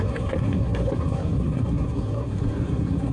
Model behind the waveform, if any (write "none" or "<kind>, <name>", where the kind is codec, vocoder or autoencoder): codec, SNAC